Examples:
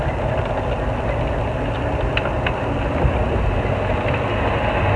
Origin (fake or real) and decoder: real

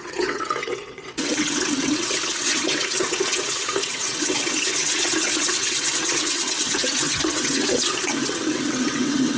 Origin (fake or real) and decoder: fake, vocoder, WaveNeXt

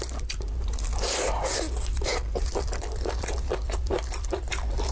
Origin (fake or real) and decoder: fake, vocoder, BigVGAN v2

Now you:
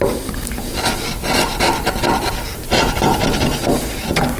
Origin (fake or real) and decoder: real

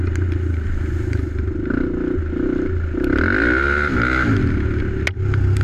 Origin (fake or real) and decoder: real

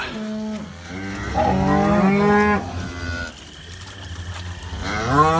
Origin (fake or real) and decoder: real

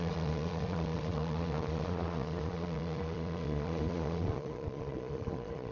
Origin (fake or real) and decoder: fake, vocoder, Vocos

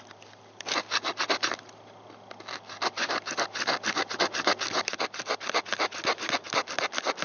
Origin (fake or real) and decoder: real